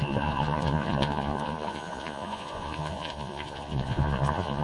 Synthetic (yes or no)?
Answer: yes